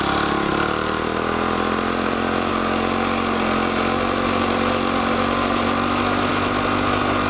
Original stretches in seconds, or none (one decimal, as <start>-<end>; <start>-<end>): 0.0-0.5; 2.5-7.3

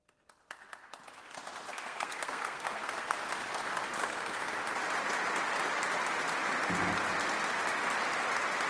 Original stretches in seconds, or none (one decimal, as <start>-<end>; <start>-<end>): 0.0-1.7; 3.2-4.0; 4.5-8.7

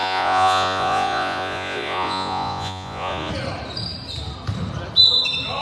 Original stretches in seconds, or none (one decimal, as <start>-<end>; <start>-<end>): 3.3-5.6

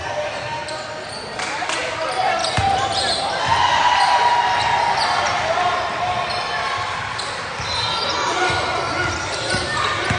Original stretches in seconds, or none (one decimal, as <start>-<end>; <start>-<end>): 0.0-10.2

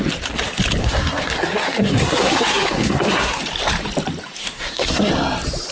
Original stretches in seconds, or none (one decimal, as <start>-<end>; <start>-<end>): 0.0-0.8; 3.4-4.4; 5.1-5.7

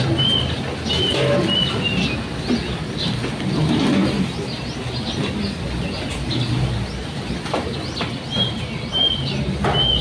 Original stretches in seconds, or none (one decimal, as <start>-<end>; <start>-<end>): 0.0-10.0

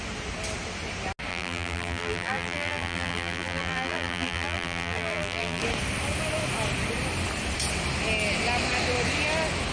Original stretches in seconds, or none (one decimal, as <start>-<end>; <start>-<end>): 0.0-1.3; 5.6-9.7